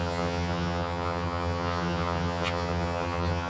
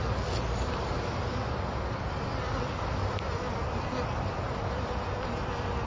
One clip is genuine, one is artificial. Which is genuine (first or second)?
second